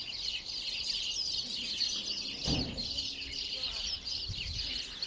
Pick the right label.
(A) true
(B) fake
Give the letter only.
A